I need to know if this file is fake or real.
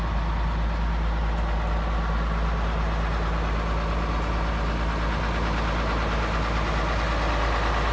real